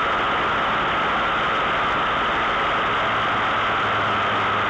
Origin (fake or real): real